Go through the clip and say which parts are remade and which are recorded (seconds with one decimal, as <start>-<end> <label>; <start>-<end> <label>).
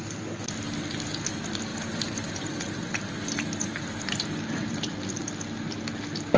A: 0.0-1.7 recorded; 1.7-4.9 remade; 4.9-6.4 recorded